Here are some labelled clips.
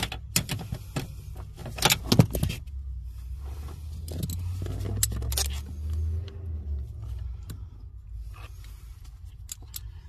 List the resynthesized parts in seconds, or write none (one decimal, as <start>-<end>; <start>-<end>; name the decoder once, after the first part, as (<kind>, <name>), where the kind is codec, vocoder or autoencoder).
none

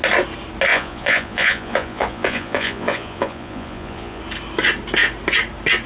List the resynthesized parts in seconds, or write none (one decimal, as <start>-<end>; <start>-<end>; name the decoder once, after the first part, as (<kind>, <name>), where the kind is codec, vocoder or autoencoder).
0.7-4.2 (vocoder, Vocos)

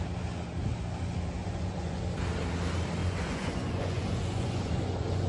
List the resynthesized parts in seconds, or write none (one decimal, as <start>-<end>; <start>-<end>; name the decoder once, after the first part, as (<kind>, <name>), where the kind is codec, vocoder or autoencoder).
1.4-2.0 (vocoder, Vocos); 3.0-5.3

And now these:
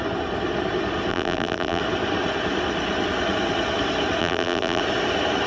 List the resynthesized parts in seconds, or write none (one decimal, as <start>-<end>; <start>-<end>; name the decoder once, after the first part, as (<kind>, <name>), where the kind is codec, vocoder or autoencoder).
1.1-1.8 (vocoder, BigVGAN v2); 4.2-4.8

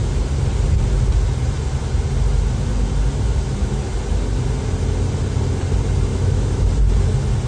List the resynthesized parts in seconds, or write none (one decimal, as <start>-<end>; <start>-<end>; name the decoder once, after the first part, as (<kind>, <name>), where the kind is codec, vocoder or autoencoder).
6.1-6.7 (autoencoder, DAC-VAE)

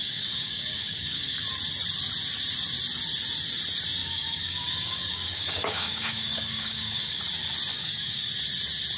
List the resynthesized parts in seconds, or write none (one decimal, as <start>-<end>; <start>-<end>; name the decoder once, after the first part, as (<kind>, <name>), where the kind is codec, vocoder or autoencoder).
0.0-1.4 (codec, DAC); 4.0-7.2; 7.7-8.3

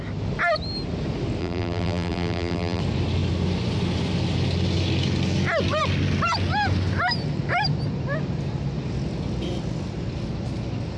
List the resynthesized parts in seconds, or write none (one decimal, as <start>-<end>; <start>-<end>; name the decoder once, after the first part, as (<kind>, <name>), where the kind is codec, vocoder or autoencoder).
1.4-2.8 (vocoder, BigVGAN v2)